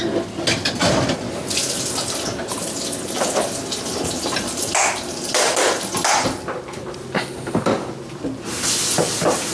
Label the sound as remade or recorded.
recorded